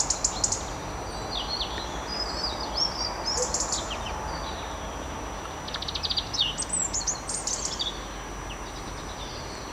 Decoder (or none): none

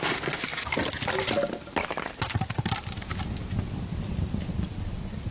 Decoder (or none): none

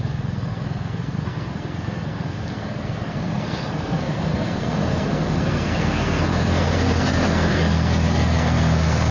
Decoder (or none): codec, SNAC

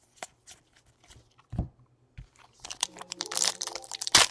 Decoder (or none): vocoder, BigVGAN v2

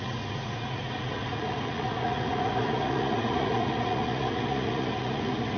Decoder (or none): vocoder, Vocos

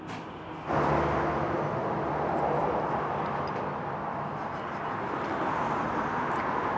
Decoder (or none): none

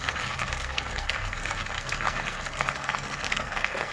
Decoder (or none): codec, SNAC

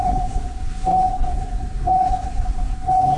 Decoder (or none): codec, SNAC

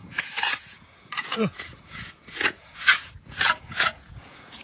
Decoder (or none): vocoder, Vocos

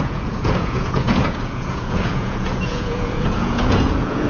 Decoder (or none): vocoder, Vocos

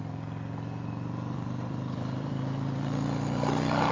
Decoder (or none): vocoder, BigVGAN v2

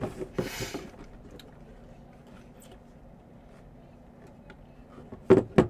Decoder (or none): none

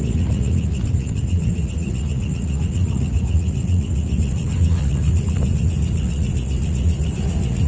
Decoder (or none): vocoder, Vocos